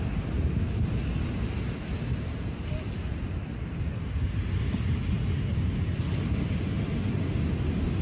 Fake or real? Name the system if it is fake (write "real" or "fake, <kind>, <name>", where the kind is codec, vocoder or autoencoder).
real